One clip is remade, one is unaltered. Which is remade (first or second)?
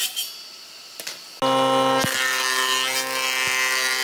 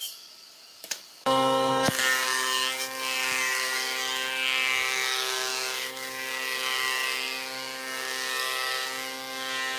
second